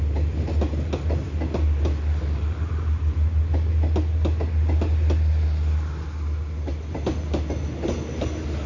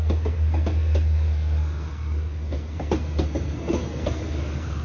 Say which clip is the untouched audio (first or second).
first